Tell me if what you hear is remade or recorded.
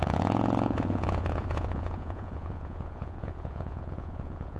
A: remade